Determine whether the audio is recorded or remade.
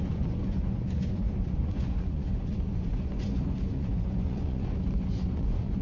remade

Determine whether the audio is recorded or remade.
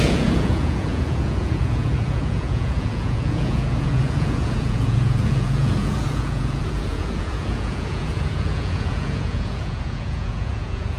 remade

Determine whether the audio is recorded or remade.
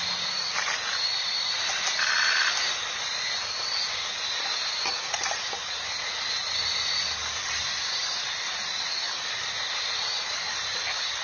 recorded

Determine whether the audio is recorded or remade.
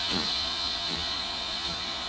remade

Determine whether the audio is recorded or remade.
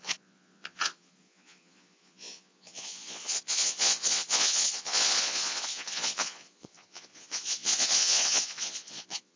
remade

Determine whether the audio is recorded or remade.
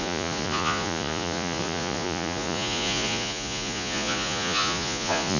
remade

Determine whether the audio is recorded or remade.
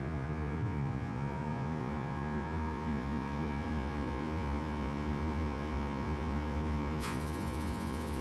remade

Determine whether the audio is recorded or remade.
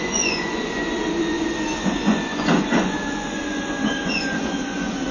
remade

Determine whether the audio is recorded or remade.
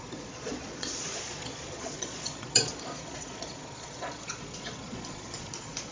remade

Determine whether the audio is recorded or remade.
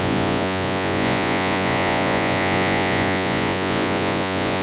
remade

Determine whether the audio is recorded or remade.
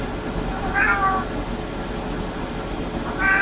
recorded